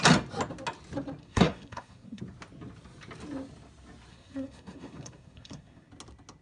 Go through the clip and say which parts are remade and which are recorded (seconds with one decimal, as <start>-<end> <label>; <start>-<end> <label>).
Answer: 0.0-1.2 recorded; 1.2-2.2 remade; 2.2-4.1 recorded; 4.1-5.9 remade; 5.9-6.4 recorded